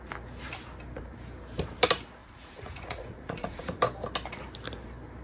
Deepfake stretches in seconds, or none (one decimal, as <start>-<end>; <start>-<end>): 2.2-3.8